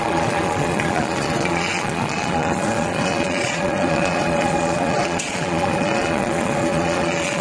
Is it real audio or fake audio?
fake